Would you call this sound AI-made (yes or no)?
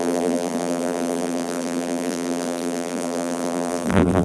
yes